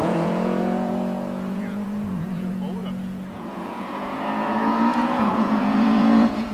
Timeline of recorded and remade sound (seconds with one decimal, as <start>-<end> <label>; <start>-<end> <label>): 0.0-6.5 remade